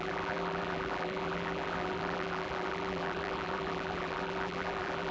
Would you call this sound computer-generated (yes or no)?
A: yes